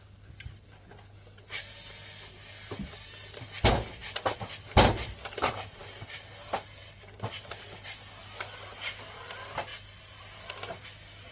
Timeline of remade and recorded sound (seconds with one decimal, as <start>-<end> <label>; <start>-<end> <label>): 0.0-11.3 recorded